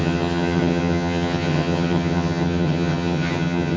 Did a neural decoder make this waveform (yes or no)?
yes